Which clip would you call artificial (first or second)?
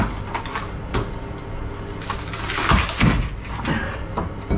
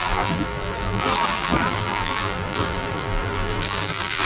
second